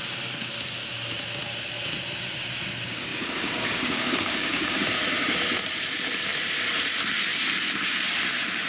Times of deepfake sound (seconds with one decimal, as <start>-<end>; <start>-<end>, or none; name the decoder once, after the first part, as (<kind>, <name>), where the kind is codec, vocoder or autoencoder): 3.1-4.8 (codec, DAC)